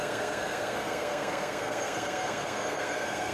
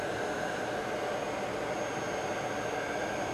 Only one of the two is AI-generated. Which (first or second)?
first